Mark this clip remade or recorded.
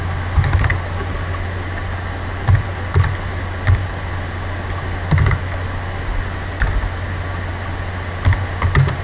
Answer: recorded